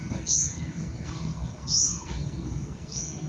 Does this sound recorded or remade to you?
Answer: remade